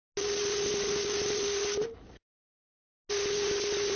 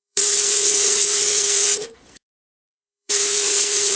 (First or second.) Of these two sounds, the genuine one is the first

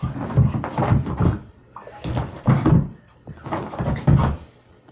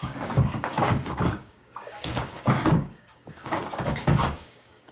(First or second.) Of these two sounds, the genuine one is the first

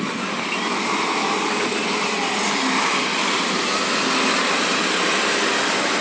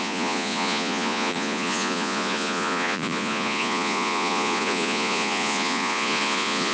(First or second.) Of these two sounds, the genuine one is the first